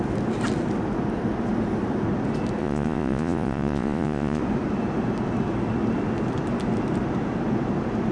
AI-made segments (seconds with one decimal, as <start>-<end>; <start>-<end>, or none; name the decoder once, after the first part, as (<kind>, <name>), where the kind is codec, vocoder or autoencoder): 2.6-4.4 (vocoder, Vocos)